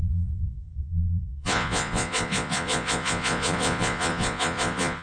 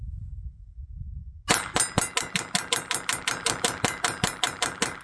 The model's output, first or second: first